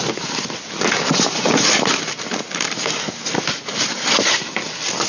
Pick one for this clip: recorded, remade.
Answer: recorded